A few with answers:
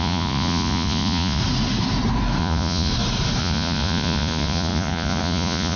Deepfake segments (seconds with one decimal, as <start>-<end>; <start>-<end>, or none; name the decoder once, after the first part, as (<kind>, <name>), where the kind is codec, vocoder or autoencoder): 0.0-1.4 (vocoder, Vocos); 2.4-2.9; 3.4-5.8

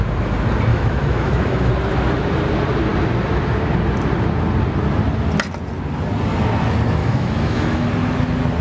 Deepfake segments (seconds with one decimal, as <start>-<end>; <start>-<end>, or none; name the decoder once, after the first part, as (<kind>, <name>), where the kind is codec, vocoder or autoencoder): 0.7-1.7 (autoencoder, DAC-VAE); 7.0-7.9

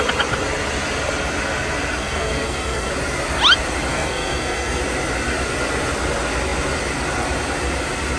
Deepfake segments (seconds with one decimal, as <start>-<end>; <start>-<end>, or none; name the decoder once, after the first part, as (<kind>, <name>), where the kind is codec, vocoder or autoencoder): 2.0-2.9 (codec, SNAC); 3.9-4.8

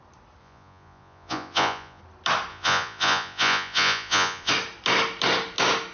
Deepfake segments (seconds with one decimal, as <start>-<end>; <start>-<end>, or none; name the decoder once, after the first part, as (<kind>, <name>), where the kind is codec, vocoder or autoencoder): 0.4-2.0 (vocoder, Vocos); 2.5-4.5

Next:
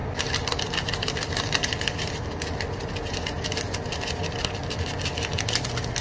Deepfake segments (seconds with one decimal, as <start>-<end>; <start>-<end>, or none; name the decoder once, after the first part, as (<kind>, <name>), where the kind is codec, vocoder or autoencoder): none